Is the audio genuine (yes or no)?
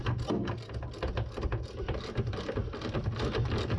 yes